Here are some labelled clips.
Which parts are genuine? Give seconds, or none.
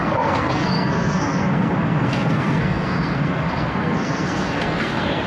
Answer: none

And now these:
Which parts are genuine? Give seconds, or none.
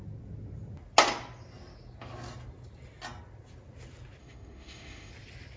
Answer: 0.0-4.2; 5.1-5.6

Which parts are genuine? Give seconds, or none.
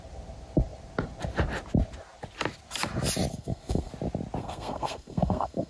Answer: 0.0-3.3; 3.9-4.4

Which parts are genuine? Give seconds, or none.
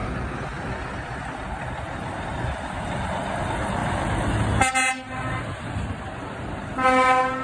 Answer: 0.0-7.4